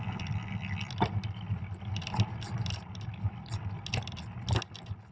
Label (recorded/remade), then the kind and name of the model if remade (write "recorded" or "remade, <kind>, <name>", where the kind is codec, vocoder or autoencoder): recorded